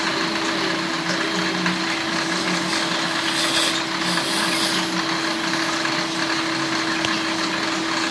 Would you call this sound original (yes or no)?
yes